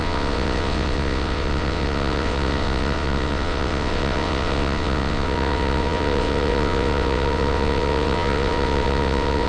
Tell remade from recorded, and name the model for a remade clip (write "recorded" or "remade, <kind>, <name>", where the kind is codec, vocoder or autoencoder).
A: remade, vocoder, WaveNeXt